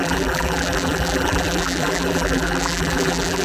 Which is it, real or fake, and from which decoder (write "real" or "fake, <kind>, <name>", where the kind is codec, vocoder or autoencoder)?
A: fake, vocoder, BigVGAN v2